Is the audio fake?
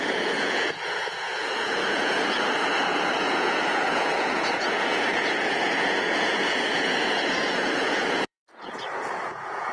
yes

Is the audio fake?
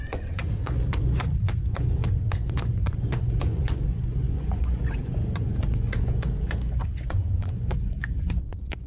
yes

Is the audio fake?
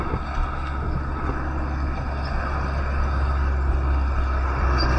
no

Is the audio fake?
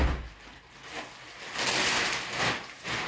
no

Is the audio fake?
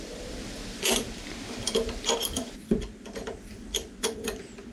yes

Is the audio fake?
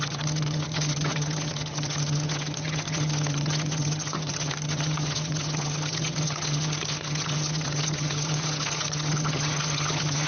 yes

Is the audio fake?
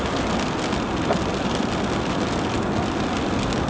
no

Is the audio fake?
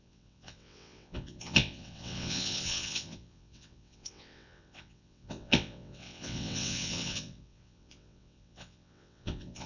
yes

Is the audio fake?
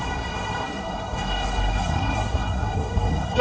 yes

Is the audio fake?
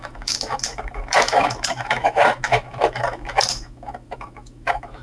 yes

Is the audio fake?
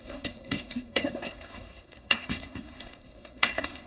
yes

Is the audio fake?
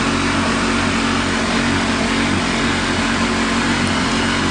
no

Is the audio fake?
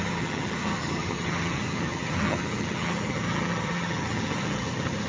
yes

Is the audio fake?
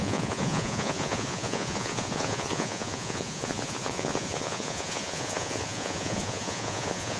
yes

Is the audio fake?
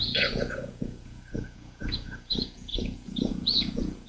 yes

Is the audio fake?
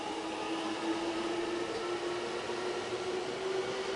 no